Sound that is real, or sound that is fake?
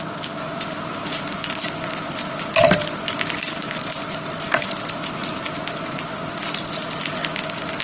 real